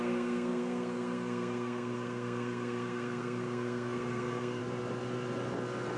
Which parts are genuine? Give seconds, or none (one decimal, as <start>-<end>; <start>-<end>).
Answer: 4.6-6.0